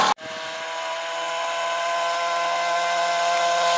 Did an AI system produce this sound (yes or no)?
no